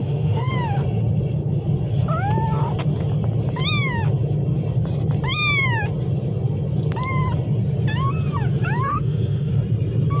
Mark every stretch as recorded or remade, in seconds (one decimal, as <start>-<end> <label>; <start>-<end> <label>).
0.0-0.5 remade; 0.5-8.9 recorded; 8.9-9.5 remade; 9.5-10.2 recorded